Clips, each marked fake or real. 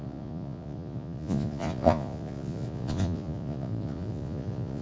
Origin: fake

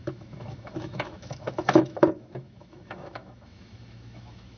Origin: fake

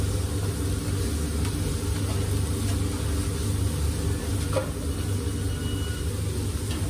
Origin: real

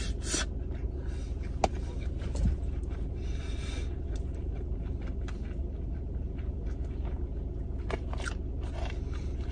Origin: real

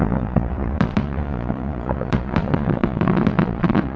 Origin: fake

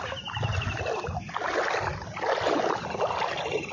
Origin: real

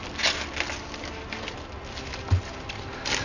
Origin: real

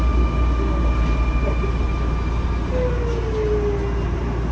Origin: real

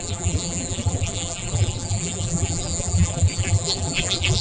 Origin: fake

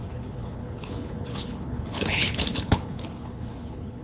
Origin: fake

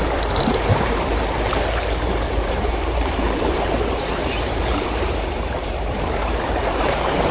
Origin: fake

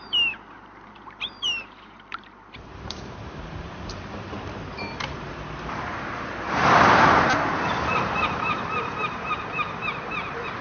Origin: fake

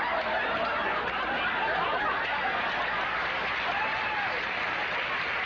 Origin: real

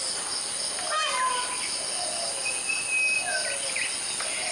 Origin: real